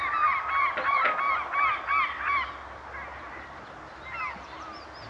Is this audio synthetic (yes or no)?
no